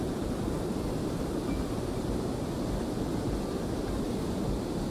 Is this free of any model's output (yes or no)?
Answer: yes